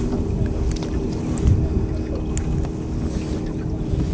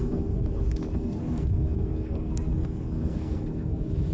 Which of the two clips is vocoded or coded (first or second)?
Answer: second